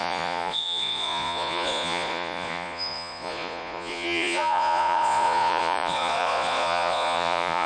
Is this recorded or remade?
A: remade